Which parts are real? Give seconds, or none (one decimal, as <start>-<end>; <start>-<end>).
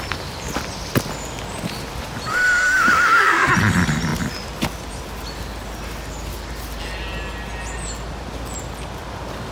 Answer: 0.0-2.3; 3.5-9.5